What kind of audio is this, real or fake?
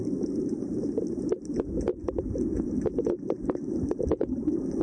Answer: real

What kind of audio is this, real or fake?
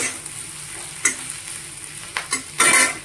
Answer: real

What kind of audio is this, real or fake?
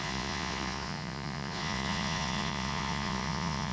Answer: fake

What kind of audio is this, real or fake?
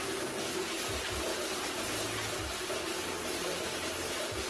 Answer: real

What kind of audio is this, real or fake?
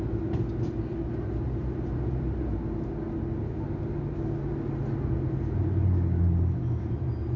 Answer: real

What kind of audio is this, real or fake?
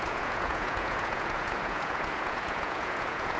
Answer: fake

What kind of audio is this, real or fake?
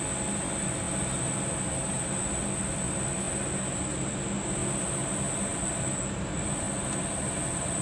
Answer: real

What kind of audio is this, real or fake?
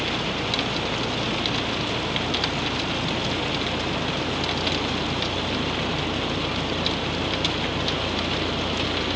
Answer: real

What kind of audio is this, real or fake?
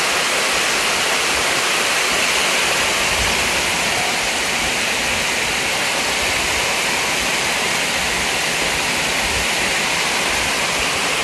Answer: real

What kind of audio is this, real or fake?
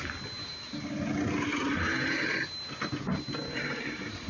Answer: real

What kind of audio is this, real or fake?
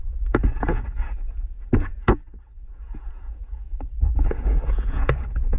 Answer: fake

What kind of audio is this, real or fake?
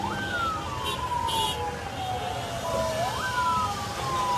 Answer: real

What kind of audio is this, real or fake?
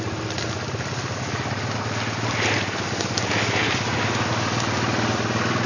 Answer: real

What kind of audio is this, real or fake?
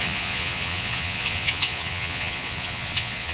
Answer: fake